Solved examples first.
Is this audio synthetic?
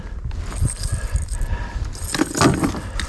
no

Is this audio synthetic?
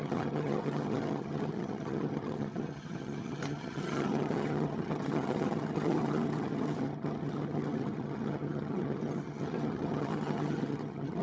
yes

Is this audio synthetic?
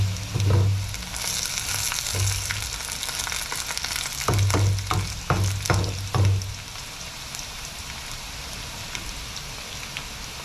no